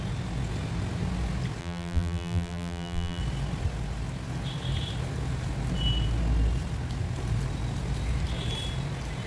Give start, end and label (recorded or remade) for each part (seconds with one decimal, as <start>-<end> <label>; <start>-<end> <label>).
0.0-1.6 recorded; 1.6-3.2 remade; 3.2-9.3 recorded